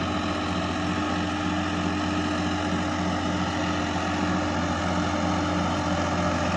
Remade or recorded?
recorded